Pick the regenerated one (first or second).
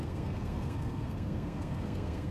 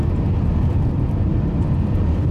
first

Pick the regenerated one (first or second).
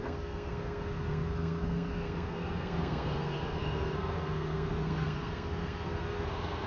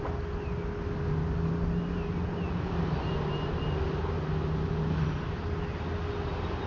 first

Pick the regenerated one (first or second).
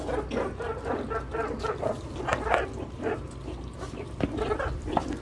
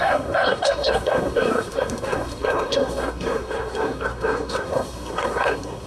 second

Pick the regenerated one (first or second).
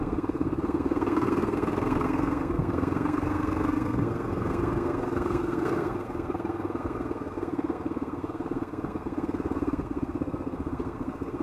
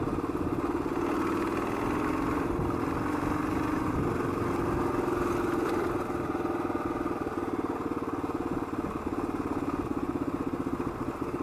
first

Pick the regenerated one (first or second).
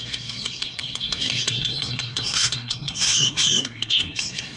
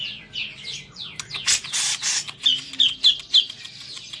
first